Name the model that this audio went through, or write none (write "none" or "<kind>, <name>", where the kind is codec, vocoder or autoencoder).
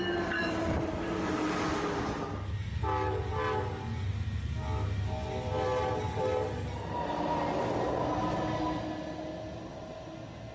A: none